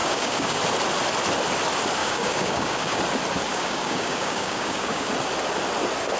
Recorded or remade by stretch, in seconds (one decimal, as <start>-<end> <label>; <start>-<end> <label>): 0.0-0.6 remade; 0.6-2.0 recorded; 2.0-3.0 remade; 3.0-3.5 recorded; 3.5-5.1 remade; 5.1-6.2 recorded